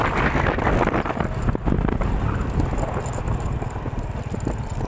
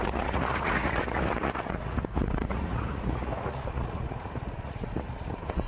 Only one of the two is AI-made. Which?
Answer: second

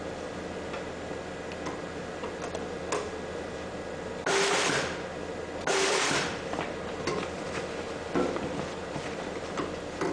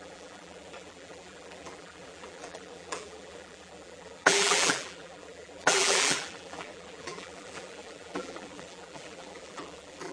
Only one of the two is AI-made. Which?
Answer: second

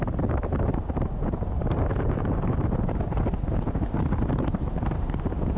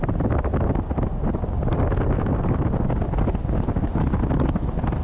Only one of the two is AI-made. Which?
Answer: first